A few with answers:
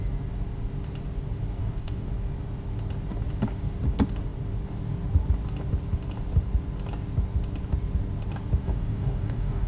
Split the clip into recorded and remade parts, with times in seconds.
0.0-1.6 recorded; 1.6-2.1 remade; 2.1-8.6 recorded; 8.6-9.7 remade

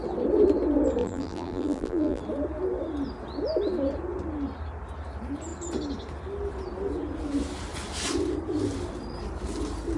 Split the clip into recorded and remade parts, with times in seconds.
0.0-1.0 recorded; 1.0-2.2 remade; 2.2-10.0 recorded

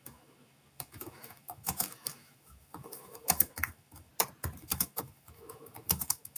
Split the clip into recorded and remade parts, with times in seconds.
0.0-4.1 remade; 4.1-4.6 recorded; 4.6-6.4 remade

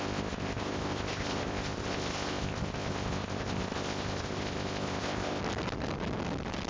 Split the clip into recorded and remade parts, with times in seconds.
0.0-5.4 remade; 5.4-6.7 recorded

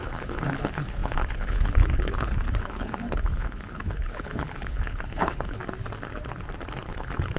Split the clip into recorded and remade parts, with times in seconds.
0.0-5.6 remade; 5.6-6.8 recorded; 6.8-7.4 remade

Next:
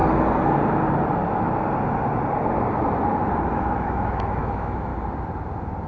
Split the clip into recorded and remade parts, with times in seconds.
0.0-3.5 recorded; 3.5-4.9 remade; 4.9-5.9 recorded

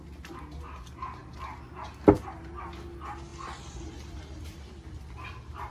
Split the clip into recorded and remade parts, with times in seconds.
0.0-5.7 recorded

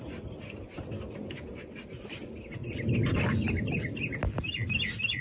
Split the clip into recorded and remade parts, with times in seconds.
0.0-5.2 recorded